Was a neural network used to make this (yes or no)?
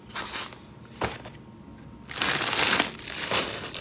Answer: no